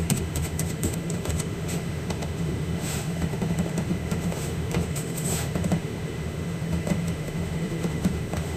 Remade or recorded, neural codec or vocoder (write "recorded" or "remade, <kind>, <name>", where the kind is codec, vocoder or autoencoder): remade, autoencoder, DAC-VAE